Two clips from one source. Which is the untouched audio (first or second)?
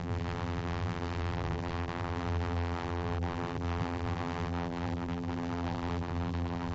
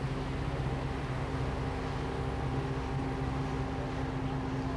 second